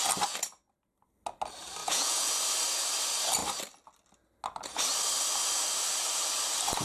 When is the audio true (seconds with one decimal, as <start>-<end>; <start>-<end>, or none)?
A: 0.0-1.8; 2.3-6.8